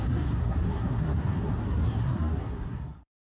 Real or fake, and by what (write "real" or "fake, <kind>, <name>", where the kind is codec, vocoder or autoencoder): fake, codec, SNAC